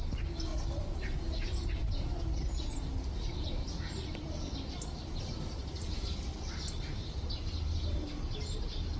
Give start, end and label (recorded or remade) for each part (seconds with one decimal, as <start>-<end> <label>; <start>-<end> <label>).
0.0-9.0 recorded